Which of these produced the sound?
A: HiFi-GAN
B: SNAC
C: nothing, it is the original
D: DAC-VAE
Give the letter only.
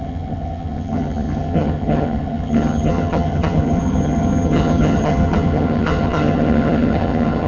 A